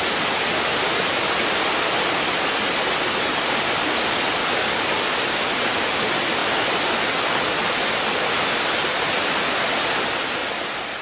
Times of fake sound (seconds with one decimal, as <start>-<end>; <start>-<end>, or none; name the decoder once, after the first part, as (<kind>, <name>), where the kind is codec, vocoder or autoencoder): 4.4-4.9 (codec, DAC)